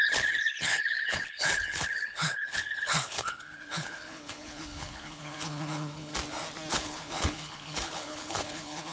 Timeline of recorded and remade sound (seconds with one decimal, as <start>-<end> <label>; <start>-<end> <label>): 0.0-6.1 remade; 6.1-6.7 recorded; 6.7-8.9 remade